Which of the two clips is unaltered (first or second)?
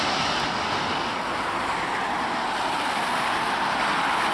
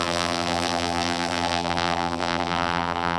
first